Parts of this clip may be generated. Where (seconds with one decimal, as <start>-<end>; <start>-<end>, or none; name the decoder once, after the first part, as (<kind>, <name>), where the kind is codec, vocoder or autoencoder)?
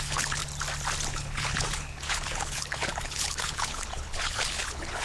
0.0-0.4 (codec, HILCodec); 1.1-5.0